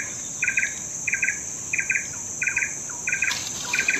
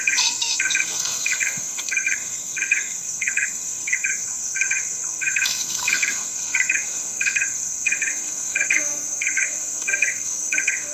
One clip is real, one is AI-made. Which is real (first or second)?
first